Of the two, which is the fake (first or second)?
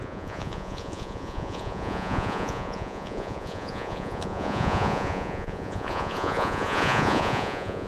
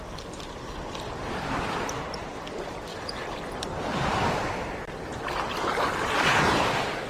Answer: first